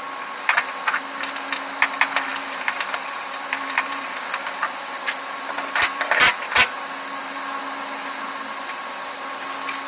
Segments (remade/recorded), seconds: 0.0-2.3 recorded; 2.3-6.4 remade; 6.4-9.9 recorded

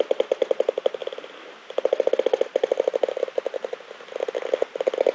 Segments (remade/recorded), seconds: 0.0-5.1 recorded

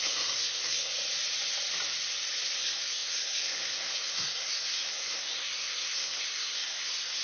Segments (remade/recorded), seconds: 0.0-0.9 remade; 0.9-2.6 recorded; 2.6-7.2 remade

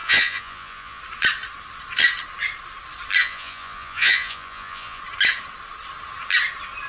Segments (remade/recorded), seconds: 0.0-1.0 remade; 1.0-3.2 recorded; 3.2-5.0 remade; 5.0-6.9 recorded